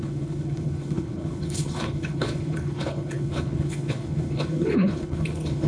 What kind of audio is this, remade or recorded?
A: remade